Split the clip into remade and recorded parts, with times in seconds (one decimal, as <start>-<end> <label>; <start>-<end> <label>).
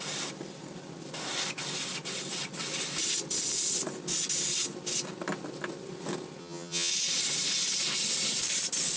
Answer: 0.0-6.4 recorded; 6.4-6.9 remade; 6.9-9.0 recorded